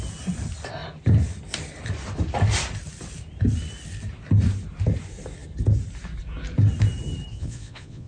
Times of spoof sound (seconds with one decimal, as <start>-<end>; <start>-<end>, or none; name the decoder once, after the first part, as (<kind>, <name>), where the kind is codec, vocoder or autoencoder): 7.3-8.1 (vocoder, Vocos)